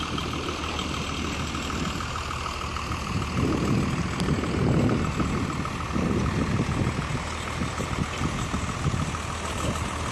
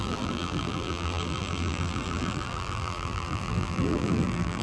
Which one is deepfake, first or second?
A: second